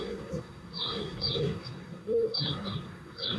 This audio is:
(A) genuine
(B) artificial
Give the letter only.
B